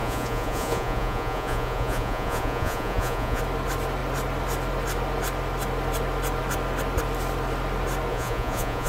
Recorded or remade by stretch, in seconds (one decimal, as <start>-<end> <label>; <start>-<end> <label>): 0.0-3.4 remade; 3.4-8.1 recorded; 8.1-8.9 remade